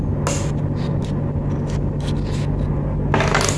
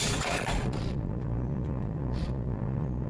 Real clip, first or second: first